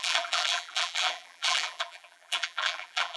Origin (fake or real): fake